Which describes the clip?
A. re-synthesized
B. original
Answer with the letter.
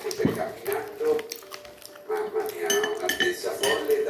B